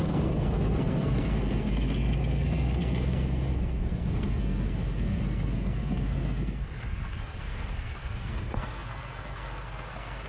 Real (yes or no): no